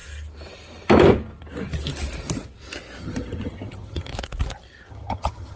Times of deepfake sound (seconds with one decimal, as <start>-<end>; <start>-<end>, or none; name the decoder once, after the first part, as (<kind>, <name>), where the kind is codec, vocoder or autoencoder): 3.0-4.1 (vocoder, HiFi-GAN); 4.9-5.6